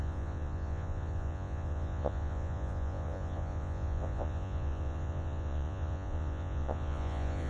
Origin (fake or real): fake